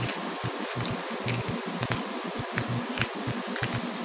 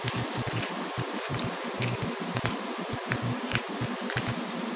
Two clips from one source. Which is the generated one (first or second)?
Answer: second